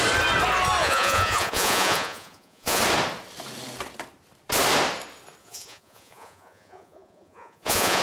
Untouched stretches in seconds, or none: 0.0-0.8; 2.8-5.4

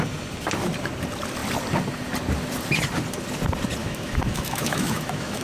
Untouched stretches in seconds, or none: 0.0-3.8

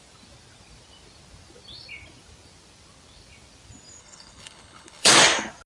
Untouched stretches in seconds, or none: 0.0-4.0; 5.1-5.7

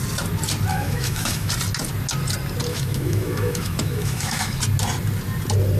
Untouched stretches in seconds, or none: 0.0-0.7; 1.5-2.7; 4.6-5.8

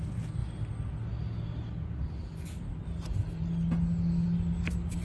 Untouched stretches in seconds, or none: 0.0-5.0

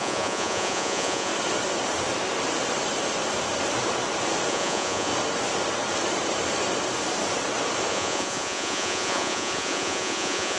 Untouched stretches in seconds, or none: 1.3-4.5; 5.1-7.9

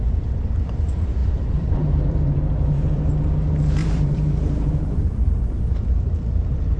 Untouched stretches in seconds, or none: 0.0-1.2; 3.1-3.8; 5.9-6.8